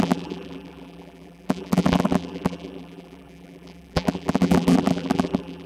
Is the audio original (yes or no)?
no